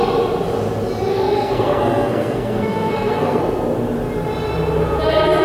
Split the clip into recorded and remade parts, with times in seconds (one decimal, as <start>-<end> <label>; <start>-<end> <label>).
0.0-1.1 recorded; 1.1-3.4 remade; 3.4-5.4 recorded